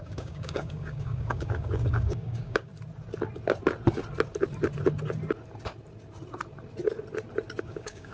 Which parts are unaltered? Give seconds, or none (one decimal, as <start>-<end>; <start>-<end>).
2.7-7.6